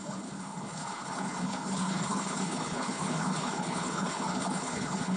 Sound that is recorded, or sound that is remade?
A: remade